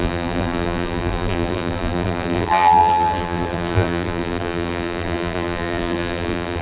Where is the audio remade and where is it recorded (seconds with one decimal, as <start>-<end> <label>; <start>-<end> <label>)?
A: 0.0-6.6 remade